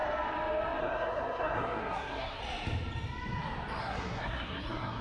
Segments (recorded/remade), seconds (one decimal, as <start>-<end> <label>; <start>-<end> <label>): 0.0-0.8 recorded; 0.8-2.4 remade; 2.4-3.8 recorded; 3.8-5.0 remade